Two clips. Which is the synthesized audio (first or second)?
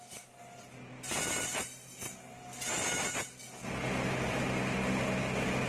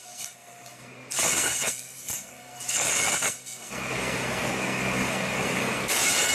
second